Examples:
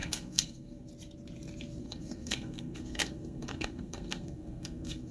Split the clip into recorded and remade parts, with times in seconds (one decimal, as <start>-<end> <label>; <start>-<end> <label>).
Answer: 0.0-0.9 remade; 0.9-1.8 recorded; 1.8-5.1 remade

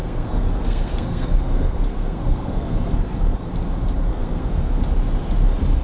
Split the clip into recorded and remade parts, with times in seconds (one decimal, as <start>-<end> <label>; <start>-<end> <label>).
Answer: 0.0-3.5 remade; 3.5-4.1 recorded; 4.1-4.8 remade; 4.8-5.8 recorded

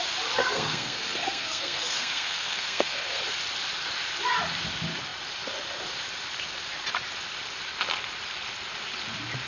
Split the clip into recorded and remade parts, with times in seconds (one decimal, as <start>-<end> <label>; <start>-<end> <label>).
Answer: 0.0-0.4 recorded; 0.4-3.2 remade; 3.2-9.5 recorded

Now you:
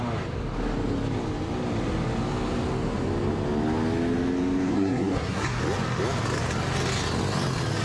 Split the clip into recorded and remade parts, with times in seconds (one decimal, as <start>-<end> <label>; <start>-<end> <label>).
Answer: 0.0-4.7 recorded; 4.7-5.6 remade; 5.6-7.8 recorded

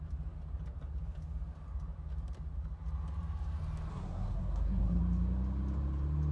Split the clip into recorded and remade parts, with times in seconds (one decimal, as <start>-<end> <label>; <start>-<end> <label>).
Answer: 0.0-3.9 recorded; 3.9-5.0 remade; 5.0-6.3 recorded